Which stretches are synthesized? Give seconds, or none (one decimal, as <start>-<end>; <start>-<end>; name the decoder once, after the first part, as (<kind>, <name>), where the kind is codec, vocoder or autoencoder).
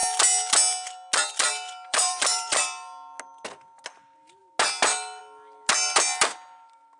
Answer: 1.9-2.6 (vocoder, BigVGAN v2)